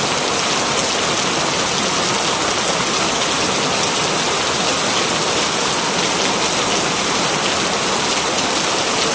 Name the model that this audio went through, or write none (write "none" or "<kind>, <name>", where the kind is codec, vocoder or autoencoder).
none